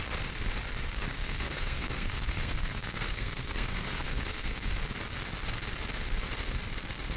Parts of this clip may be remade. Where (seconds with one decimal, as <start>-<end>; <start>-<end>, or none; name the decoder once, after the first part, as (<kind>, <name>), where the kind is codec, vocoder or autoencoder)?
1.2-4.7 (codec, SNAC)